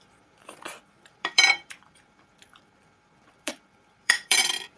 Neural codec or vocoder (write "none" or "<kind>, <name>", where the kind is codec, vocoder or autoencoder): vocoder, BigVGAN v2